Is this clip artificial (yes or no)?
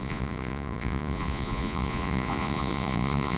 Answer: yes